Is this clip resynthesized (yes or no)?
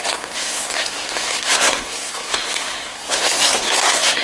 yes